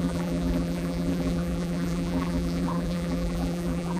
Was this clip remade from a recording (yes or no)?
yes